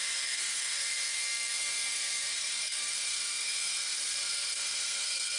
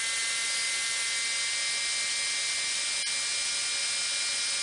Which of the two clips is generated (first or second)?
first